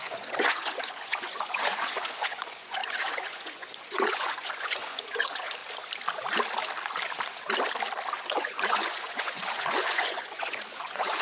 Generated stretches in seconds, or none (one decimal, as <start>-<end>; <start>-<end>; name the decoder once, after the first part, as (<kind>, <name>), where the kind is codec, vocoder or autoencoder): 0.0-5.6 (vocoder, Vocos); 8.1-11.2

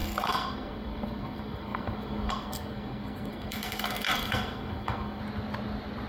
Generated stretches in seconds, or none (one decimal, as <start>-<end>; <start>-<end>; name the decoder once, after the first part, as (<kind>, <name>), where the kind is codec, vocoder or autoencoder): 0.0-5.2 (codec, SNAC)